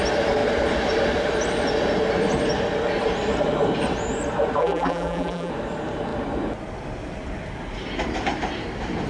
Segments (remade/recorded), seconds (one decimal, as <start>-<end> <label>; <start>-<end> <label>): 0.0-4.6 recorded; 4.6-5.5 remade; 5.5-9.1 recorded